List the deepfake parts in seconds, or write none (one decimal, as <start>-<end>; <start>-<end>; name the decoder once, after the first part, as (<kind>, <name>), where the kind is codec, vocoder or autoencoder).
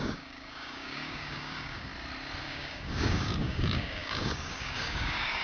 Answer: 0.0-1.9 (codec, DAC); 2.4-5.4